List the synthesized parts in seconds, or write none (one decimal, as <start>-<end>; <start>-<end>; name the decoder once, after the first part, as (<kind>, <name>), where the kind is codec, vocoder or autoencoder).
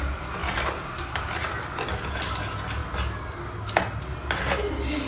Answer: none